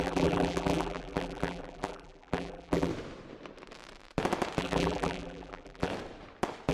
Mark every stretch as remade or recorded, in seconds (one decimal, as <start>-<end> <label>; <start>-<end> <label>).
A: 0.0-2.9 remade; 2.9-4.6 recorded; 4.6-5.9 remade; 5.9-6.7 recorded